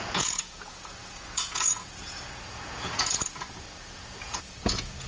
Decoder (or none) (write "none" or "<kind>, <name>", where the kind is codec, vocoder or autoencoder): vocoder, Vocos